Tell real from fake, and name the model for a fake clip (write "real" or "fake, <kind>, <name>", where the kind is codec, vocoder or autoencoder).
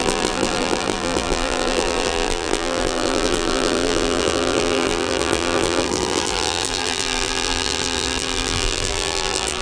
fake, vocoder, BigVGAN v2